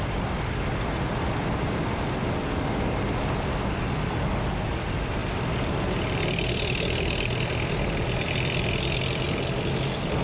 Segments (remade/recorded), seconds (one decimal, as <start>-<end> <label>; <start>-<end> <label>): 0.0-10.2 recorded